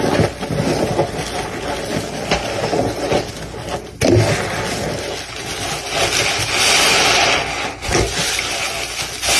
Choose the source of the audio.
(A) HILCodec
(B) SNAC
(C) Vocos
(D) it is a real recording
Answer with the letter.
D